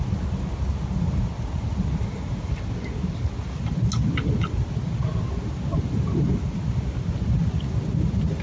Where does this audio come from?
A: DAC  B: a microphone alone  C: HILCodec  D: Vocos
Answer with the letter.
B